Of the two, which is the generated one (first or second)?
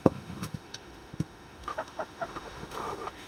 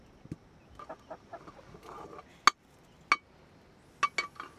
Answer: first